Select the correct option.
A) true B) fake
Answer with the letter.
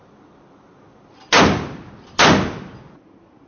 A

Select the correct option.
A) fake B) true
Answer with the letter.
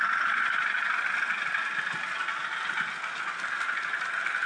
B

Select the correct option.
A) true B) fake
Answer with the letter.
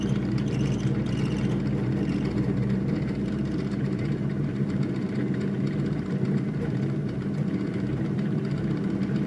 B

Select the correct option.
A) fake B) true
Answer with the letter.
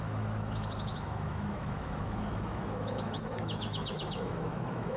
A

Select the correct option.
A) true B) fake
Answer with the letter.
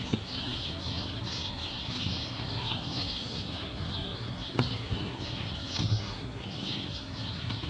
B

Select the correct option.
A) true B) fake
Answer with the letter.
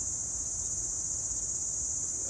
A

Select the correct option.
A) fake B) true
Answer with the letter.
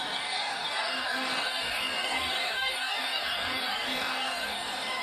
A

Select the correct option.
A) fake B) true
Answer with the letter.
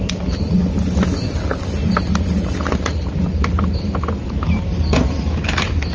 B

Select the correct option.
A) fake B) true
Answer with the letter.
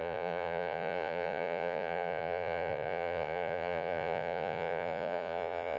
A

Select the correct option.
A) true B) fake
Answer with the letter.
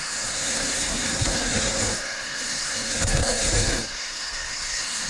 B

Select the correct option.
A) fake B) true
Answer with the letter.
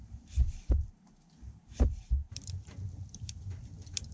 A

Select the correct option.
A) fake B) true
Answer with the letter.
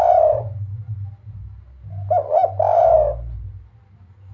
B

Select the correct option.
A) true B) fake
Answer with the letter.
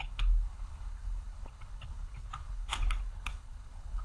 B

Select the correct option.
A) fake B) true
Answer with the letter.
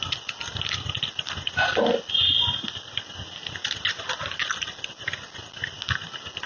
B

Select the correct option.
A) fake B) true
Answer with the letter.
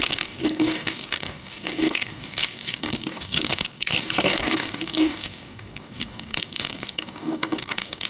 A